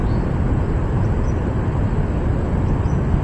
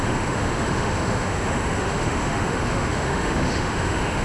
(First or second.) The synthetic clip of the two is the second